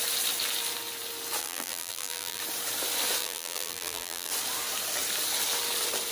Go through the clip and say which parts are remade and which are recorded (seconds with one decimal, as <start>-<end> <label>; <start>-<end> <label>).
0.0-1.4 recorded; 1.4-2.4 remade; 2.4-3.2 recorded; 3.2-4.3 remade; 4.3-6.1 recorded